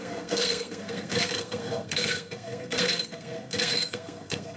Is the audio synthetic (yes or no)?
yes